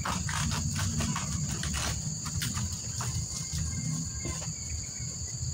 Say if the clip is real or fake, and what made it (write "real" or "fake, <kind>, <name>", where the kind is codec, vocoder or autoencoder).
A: real